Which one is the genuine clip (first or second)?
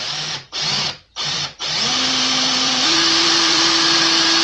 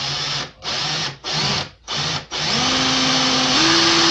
second